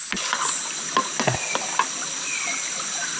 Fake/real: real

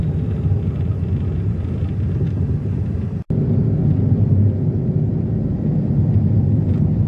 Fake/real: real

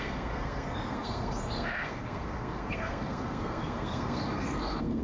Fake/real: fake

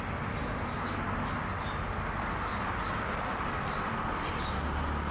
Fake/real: real